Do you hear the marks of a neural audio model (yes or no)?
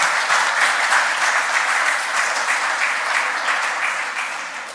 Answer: no